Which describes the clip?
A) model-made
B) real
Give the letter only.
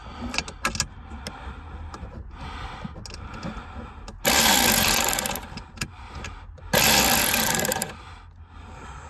B